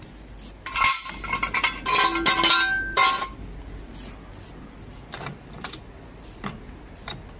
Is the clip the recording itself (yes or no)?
yes